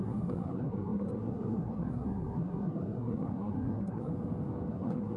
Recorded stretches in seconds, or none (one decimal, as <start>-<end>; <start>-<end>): 4.1-4.7